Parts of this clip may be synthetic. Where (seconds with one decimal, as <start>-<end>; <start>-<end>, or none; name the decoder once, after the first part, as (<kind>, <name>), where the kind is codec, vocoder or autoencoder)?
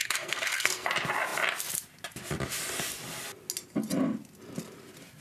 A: 0.0-0.9 (codec, SNAC)